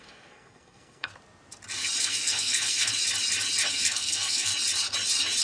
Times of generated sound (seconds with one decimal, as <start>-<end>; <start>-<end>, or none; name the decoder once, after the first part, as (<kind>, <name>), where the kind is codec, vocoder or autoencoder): 0.0-1.1 (codec, SNAC); 2.0-2.9; 3.7-4.5